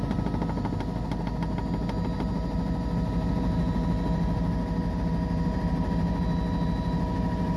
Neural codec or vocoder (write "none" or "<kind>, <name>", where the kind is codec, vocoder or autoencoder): none